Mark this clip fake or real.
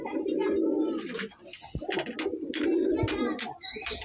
real